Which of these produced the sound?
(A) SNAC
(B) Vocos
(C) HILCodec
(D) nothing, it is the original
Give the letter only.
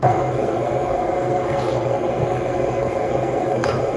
A